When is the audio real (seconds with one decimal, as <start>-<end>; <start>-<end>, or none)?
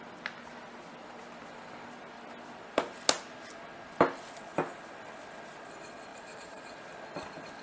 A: 0.0-6.1; 6.8-7.6